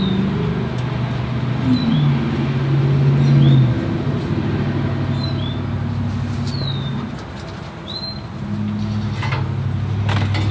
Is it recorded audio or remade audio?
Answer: recorded